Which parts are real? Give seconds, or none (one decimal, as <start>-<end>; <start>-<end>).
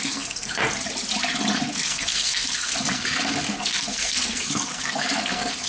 0.6-1.7